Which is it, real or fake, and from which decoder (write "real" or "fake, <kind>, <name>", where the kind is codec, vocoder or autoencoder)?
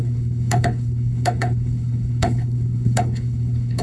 fake, codec, HILCodec